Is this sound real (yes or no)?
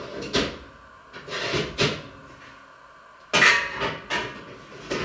yes